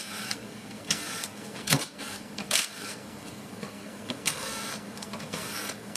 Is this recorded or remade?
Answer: remade